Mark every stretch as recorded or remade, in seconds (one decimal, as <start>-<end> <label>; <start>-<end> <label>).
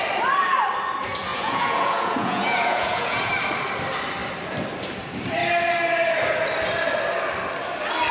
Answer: 0.0-1.3 recorded; 1.3-3.3 remade; 3.3-8.1 recorded